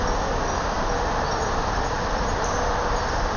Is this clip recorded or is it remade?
recorded